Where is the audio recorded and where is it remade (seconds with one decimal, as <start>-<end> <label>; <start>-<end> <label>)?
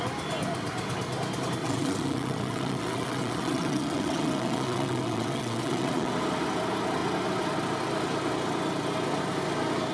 0.0-1.6 recorded; 1.6-6.1 remade; 6.1-9.9 recorded